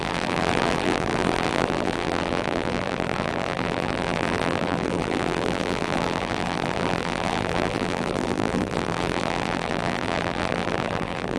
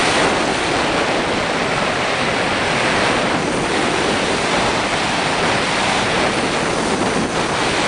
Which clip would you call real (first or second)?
second